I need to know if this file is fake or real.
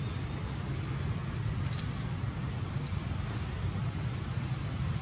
real